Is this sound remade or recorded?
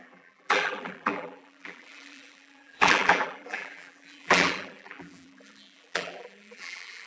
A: remade